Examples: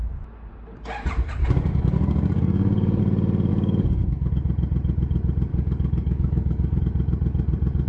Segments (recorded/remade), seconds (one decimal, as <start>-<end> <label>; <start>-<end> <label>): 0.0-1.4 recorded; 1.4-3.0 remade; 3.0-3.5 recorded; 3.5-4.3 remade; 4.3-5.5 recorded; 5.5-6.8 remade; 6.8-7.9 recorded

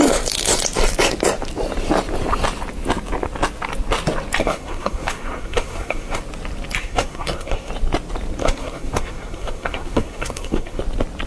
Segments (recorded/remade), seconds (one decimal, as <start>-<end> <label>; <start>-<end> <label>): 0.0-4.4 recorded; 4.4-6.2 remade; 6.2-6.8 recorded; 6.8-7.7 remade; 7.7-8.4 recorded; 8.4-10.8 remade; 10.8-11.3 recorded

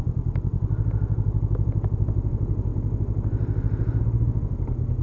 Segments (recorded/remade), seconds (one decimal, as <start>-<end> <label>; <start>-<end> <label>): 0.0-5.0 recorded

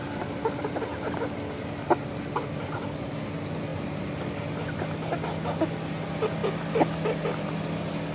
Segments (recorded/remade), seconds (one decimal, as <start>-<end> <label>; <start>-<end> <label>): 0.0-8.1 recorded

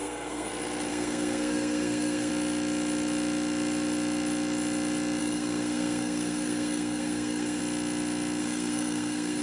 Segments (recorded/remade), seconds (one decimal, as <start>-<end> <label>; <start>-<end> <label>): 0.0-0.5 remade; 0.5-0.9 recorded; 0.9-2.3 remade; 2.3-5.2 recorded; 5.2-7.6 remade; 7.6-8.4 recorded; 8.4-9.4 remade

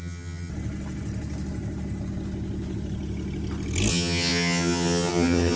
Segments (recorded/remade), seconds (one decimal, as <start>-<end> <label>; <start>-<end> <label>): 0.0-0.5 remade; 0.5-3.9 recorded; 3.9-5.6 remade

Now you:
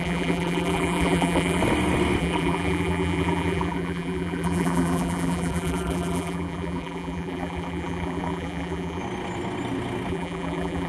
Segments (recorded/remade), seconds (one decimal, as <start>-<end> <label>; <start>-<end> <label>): 0.0-1.6 remade; 1.6-2.2 recorded; 2.2-9.0 remade; 9.0-10.1 recorded; 10.1-10.9 remade